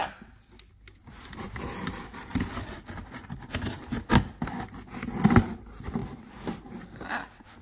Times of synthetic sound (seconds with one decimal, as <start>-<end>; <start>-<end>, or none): 1.1-2.3; 5.4-7.6